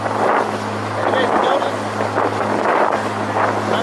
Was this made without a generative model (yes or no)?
yes